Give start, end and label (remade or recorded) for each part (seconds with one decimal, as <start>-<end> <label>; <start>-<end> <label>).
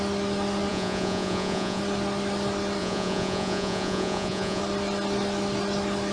0.0-0.7 recorded; 0.7-1.8 remade; 1.8-2.8 recorded; 2.8-4.6 remade; 4.6-6.1 recorded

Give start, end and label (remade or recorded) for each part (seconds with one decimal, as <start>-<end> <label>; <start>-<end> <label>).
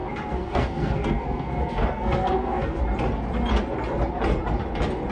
0.0-2.8 remade; 2.8-5.1 recorded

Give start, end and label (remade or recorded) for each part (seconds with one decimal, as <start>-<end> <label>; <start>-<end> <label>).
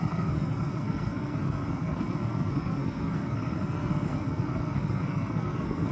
0.0-5.9 remade